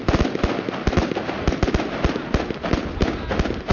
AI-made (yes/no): no